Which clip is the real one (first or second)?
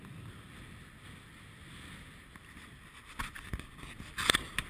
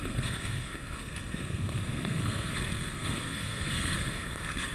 first